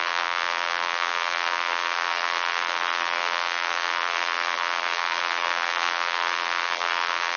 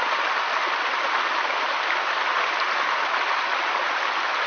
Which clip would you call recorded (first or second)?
second